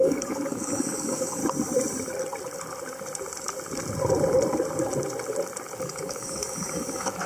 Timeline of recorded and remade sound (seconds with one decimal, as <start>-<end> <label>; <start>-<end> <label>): 0.0-1.4 remade; 1.4-5.8 recorded; 5.8-7.3 remade